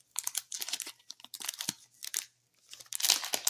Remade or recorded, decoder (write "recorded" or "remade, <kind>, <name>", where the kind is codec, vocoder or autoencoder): recorded